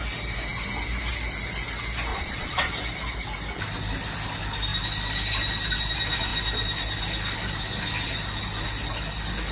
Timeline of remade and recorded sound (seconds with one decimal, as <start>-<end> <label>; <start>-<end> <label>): 0.0-2.1 recorded; 2.1-2.7 remade; 2.7-9.5 recorded

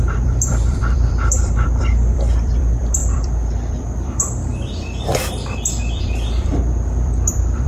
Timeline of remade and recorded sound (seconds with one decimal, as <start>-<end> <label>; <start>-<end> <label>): 0.0-7.7 remade

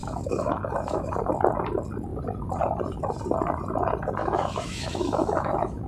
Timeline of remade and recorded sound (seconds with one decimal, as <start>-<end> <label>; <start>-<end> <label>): 0.0-1.1 remade; 1.1-4.2 recorded; 4.2-5.9 remade

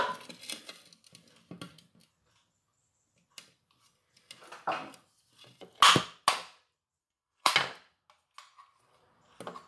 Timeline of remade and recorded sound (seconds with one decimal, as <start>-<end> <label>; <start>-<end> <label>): 0.0-7.0 recorded; 7.0-7.5 remade; 7.5-9.7 recorded

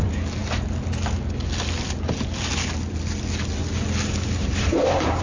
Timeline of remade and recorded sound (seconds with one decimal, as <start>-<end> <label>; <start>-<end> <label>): 0.0-4.4 recorded; 4.4-5.2 remade

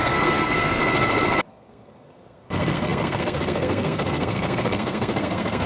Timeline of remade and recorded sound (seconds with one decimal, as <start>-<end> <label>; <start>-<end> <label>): 0.0-0.8 remade; 0.8-1.5 recorded; 1.5-5.7 remade

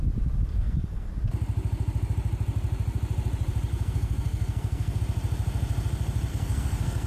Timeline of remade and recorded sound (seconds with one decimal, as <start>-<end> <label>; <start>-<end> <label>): 0.0-0.5 recorded; 0.5-1.1 remade; 1.1-3.7 recorded; 3.7-5.0 remade; 5.0-6.3 recorded; 6.3-7.1 remade

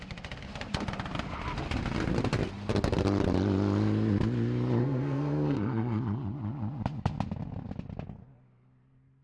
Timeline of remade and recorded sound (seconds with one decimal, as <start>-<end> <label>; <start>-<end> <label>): 0.0-4.8 recorded; 4.8-6.0 remade; 6.0-9.2 recorded